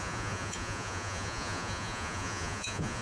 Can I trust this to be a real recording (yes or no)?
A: no